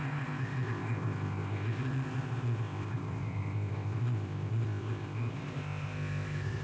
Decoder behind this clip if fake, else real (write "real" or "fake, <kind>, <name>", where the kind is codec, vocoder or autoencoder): fake, codec, ZipCodec